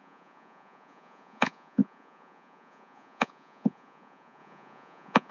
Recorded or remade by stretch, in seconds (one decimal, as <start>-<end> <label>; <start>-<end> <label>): 0.0-5.3 remade